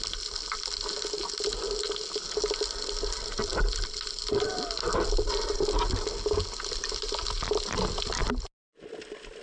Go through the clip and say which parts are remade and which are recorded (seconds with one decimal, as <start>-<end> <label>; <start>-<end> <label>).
0.0-9.4 recorded